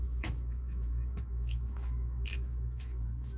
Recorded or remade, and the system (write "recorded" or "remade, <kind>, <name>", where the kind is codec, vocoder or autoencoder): remade, autoencoder, DAC-VAE